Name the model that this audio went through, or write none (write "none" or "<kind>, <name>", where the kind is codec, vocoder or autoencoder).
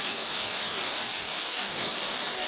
codec, DAC